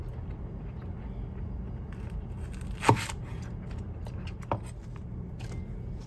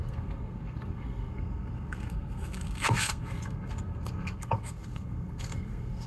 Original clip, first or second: first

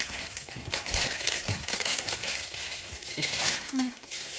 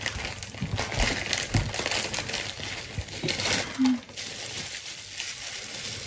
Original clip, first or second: second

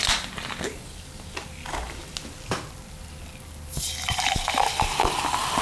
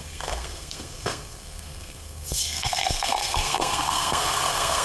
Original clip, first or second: first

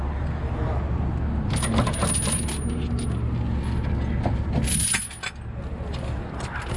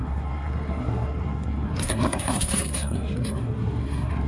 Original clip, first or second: first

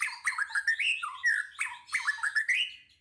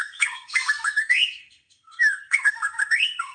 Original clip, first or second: first